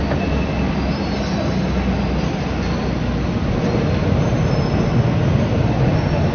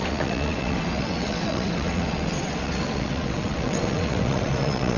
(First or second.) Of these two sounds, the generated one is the second